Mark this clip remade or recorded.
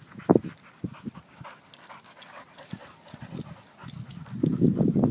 recorded